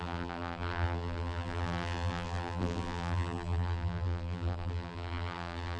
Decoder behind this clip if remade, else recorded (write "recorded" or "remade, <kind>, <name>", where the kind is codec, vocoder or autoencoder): remade, vocoder, BigVGAN v2